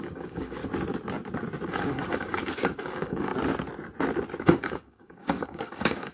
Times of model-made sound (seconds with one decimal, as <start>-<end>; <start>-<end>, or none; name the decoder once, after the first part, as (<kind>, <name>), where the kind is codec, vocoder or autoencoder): 0.0-0.6 (codec, DAC); 1.7-3.3; 4.4-6.1